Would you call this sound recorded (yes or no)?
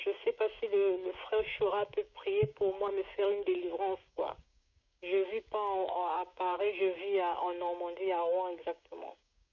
no